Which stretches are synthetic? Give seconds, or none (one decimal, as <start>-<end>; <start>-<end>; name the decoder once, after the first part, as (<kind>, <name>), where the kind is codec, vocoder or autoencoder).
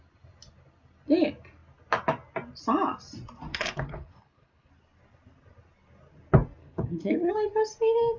3.5-4.7 (codec, HILCodec); 6.6-7.3